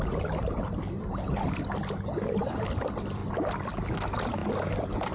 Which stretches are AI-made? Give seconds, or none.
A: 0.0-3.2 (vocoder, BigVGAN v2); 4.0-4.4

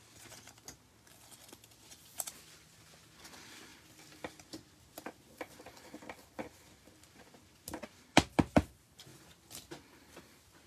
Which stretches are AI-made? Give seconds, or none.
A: none

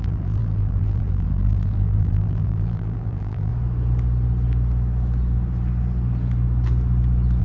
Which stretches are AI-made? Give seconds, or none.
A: 0.0-3.5 (vocoder, BigVGAN v2)

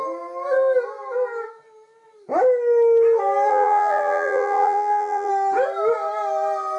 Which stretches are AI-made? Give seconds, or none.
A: 3.5-5.3 (vocoder, BigVGAN v2)

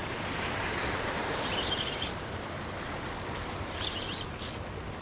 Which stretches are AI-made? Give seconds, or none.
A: 0.0-0.6 (vocoder, BigVGAN v2); 1.2-3.1

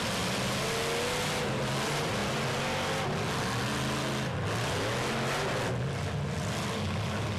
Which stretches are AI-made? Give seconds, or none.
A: none